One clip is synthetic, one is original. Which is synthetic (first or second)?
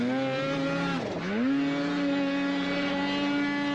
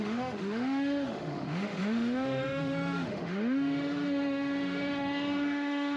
second